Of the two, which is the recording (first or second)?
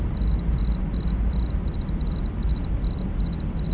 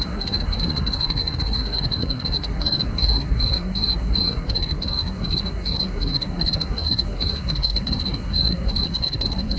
first